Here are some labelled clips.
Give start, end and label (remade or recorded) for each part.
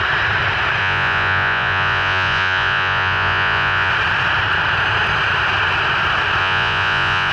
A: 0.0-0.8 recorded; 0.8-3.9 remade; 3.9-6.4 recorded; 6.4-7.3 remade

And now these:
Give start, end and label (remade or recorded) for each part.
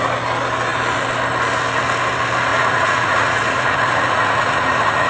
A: 0.0-2.5 recorded; 2.5-5.1 remade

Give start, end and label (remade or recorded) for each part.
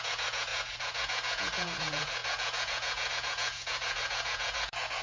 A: 0.0-5.0 remade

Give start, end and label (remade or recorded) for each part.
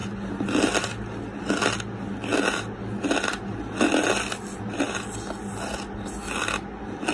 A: 0.0-7.1 recorded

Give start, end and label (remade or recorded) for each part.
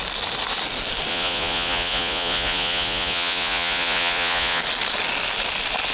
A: 0.0-1.1 recorded; 1.1-4.6 remade; 4.6-5.9 recorded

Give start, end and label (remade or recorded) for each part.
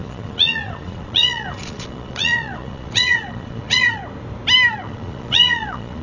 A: 0.0-4.0 remade; 4.0-4.7 recorded; 4.7-6.0 remade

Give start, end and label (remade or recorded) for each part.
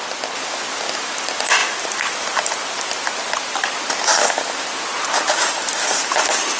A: 0.0-6.6 recorded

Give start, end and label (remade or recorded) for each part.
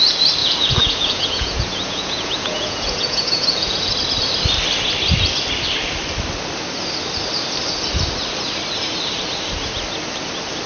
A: 0.0-0.4 recorded; 0.4-3.9 remade; 3.9-10.7 recorded